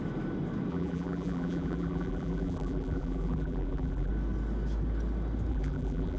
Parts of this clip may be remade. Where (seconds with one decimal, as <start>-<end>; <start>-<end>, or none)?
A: 0.7-4.1; 5.5-6.2